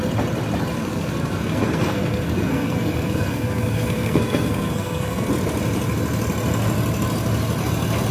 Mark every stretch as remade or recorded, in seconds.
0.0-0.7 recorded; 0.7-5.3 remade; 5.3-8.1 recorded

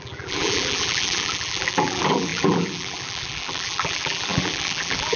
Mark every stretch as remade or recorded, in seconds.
0.0-5.2 remade